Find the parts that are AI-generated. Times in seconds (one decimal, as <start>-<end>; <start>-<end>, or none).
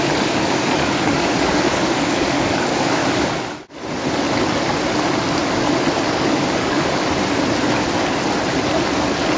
0.0-3.0; 6.1-7.0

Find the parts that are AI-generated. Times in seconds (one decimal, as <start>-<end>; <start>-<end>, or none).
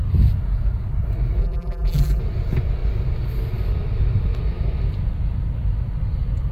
1.4-2.2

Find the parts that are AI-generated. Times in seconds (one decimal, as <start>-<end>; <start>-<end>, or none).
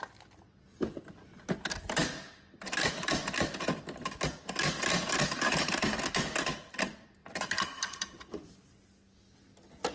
none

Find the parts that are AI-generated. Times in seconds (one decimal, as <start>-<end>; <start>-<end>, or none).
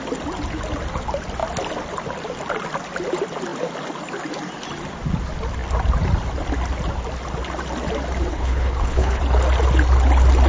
8.3-9.2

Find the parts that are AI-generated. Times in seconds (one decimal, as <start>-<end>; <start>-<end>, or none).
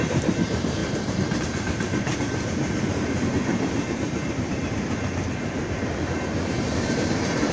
0.0-7.5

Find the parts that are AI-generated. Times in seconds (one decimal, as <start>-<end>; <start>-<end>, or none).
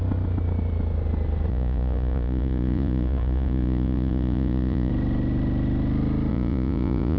1.5-4.9; 6.3-7.2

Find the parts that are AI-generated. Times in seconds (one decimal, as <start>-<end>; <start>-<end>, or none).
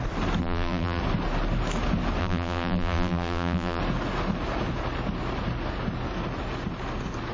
0.4-1.0; 2.2-3.8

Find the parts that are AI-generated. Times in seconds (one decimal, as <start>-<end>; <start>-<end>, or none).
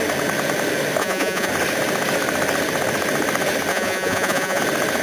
1.0-1.5; 3.7-4.6